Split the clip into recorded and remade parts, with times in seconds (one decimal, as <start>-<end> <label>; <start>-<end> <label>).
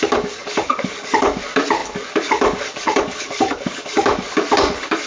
0.0-5.1 remade